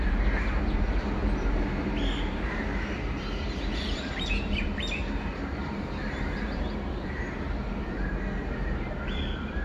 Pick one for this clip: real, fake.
fake